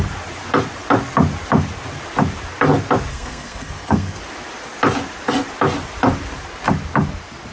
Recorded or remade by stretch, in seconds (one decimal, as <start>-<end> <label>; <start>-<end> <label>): 0.0-3.1 recorded; 3.1-4.2 remade; 4.2-7.5 recorded

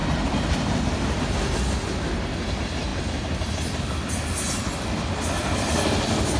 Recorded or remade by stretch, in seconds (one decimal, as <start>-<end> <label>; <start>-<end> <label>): 0.0-6.4 recorded

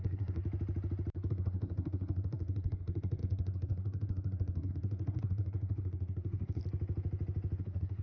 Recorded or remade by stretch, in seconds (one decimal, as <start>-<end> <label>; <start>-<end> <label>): 0.0-0.4 remade; 0.4-1.3 recorded; 1.3-6.6 remade; 6.6-7.6 recorded; 7.6-8.0 remade

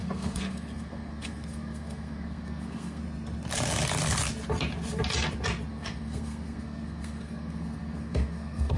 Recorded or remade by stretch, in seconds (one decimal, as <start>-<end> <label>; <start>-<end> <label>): 0.0-3.0 remade; 3.0-5.7 recorded; 5.7-8.8 remade

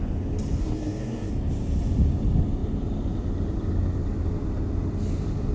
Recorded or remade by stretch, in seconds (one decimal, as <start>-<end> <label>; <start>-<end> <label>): 0.0-0.6 recorded; 0.6-1.3 remade; 1.3-5.5 recorded

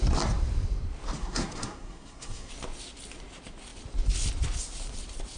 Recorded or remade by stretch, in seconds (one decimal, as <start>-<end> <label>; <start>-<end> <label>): 0.0-1.2 recorded; 1.2-2.5 remade; 2.5-5.4 recorded

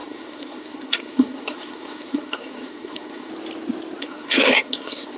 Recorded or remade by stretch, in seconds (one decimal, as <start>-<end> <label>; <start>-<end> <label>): 0.0-3.3 remade; 3.3-4.0 recorded; 4.0-5.2 remade

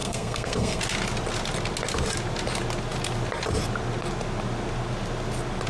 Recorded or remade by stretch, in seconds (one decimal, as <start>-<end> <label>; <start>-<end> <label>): 0.0-0.8 remade; 0.8-5.7 recorded